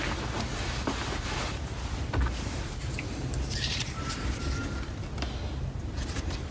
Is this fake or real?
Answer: real